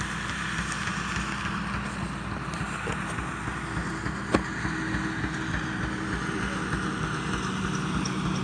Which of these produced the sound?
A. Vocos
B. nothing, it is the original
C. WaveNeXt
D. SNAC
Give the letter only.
B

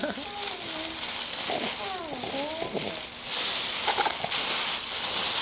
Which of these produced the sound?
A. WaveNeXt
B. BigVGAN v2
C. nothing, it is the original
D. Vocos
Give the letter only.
C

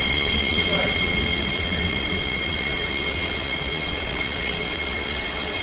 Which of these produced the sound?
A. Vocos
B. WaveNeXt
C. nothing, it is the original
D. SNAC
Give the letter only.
B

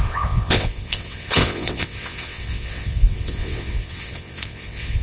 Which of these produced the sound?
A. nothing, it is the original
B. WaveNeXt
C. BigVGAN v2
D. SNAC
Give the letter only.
B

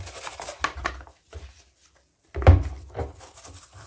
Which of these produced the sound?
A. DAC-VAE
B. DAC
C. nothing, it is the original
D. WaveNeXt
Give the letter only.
C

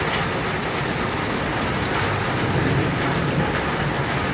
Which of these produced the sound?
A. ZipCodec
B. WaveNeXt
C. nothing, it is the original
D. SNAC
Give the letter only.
C